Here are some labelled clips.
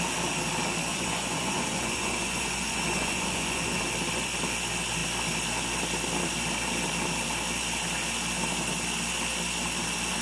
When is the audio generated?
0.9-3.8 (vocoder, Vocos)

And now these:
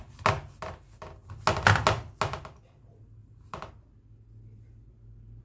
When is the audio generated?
none

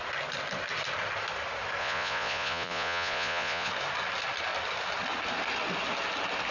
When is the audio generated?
1.8-3.7 (vocoder, Vocos)